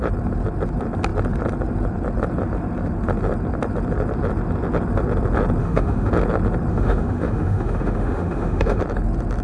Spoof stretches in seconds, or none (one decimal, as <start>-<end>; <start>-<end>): 5.6-6.1; 6.7-8.8